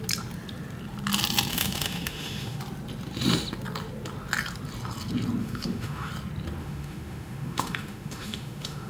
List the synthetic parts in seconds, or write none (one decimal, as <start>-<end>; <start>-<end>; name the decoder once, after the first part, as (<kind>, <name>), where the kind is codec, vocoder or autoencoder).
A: 1.5-2.6 (autoencoder, DAC-VAE); 5.4-6.1; 6.6-8.9